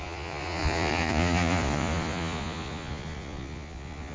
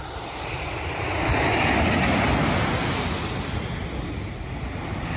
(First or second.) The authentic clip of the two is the second